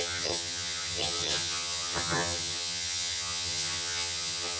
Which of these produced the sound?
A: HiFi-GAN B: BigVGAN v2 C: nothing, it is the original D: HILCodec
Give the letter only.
A